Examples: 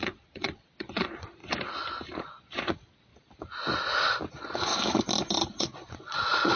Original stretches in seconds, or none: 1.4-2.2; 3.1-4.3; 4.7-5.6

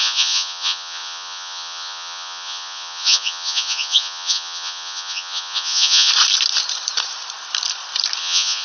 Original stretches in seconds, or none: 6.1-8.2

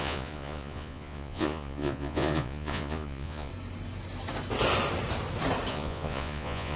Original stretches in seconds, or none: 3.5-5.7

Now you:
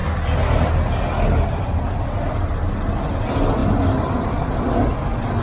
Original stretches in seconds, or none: 0.0-5.4